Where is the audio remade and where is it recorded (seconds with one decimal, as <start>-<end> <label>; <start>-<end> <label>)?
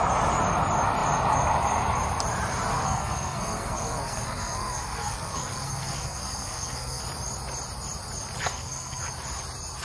0.0-2.7 recorded; 2.7-7.0 remade; 7.0-8.4 recorded; 8.4-9.0 remade; 9.0-9.8 recorded